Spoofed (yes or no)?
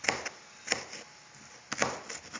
no